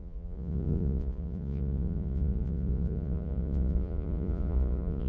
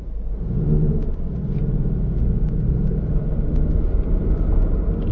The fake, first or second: first